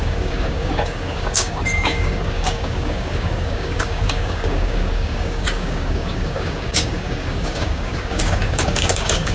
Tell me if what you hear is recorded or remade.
remade